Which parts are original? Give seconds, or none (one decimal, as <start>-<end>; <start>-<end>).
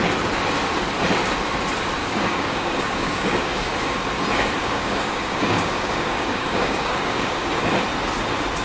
0.0-2.0; 3.7-4.6; 7.6-8.6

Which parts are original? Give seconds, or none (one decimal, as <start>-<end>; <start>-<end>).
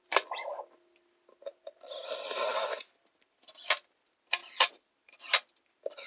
0.0-6.1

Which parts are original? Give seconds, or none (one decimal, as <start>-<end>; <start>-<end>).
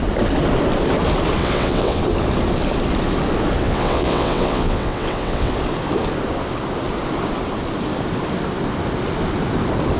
0.0-1.4; 2.0-3.6; 5.5-10.0